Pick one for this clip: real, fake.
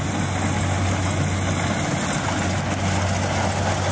real